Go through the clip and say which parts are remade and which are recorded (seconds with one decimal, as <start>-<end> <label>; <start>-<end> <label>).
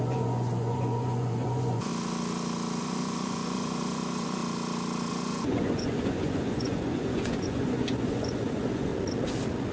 0.0-1.9 remade; 1.9-2.8 recorded; 2.8-4.4 remade; 4.4-5.1 recorded; 5.1-8.9 remade; 8.9-9.7 recorded